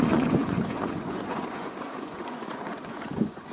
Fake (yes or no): yes